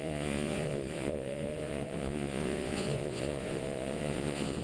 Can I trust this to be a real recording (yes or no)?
no